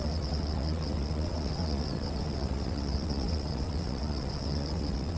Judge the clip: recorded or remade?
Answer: remade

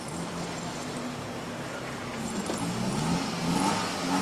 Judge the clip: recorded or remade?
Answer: recorded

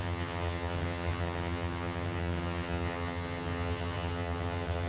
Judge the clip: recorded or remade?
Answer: remade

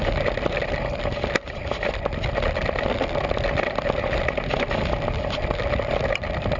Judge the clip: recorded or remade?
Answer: recorded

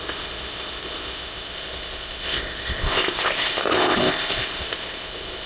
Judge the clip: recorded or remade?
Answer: remade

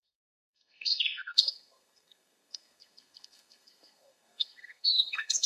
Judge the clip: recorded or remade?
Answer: remade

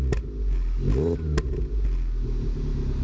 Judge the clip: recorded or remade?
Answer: recorded